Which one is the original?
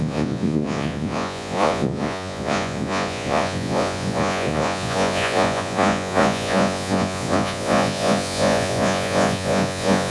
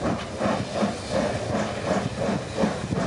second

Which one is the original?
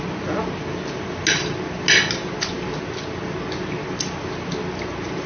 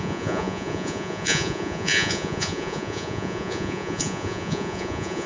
first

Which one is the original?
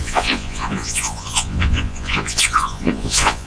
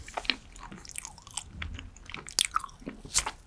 second